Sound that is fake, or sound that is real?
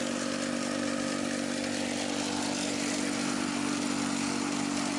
real